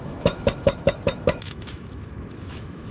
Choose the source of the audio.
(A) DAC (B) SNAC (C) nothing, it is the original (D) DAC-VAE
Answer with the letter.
D